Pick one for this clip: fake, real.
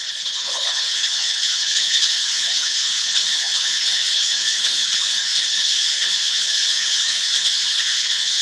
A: fake